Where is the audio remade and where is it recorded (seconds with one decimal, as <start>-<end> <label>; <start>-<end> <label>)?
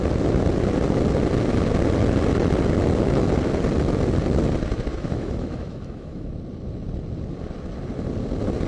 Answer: 0.0-4.9 recorded; 4.9-6.3 remade; 6.3-8.7 recorded